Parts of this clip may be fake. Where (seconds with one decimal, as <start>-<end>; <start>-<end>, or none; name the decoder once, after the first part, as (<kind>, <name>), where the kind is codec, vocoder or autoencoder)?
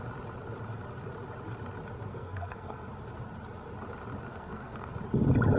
2.1-2.9 (codec, SNAC); 4.3-4.9